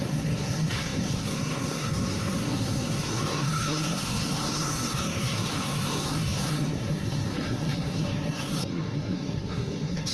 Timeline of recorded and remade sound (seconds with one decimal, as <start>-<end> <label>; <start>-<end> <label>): 0.0-10.1 remade